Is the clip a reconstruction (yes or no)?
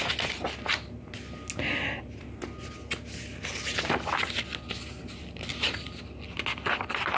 no